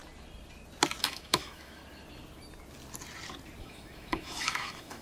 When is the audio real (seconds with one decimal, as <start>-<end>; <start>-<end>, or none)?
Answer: 0.0-1.0; 1.8-3.6